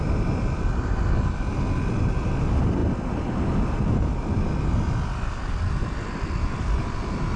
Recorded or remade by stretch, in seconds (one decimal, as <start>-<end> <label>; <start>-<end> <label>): 0.0-7.4 recorded